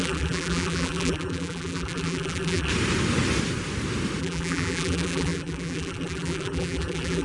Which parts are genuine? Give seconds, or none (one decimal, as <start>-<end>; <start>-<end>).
2.7-4.2

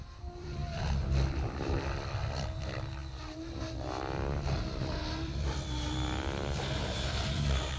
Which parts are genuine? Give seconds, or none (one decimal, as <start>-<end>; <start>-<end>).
3.0-4.8

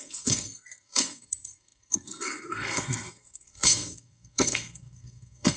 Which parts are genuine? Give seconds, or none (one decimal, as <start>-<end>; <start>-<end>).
none

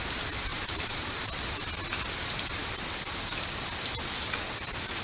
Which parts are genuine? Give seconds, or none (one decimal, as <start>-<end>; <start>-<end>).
0.0-0.5; 1.3-5.0

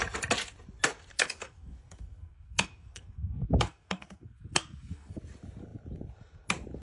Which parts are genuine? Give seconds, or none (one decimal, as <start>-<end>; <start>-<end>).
0.0-1.1; 5.2-6.8

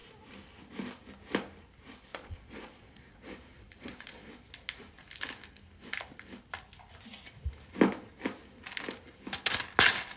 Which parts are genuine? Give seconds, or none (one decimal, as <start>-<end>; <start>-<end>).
0.0-2.1; 4.3-10.2